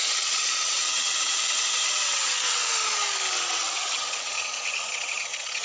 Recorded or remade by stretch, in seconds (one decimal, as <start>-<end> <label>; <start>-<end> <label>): 0.0-2.7 remade; 2.7-3.3 recorded; 3.3-5.6 remade

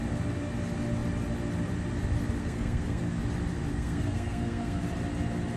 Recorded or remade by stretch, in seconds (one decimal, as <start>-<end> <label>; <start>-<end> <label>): 0.0-2.4 recorded; 2.4-3.2 remade; 3.2-3.7 recorded; 3.7-4.8 remade; 4.8-5.6 recorded

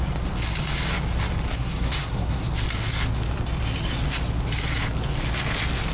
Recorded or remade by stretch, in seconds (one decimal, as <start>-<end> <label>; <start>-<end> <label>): 0.0-1.5 recorded; 1.5-2.5 remade; 2.5-5.9 recorded

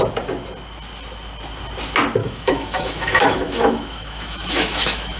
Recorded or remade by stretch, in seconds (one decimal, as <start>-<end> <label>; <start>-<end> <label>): 0.0-2.2 recorded; 2.2-5.2 remade

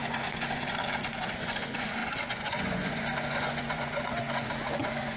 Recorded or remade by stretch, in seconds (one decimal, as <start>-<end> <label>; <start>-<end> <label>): 0.0-5.2 remade